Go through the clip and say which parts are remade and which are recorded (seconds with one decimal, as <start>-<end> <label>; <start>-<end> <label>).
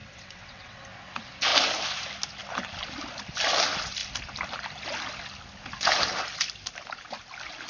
0.0-0.8 remade; 0.8-7.7 recorded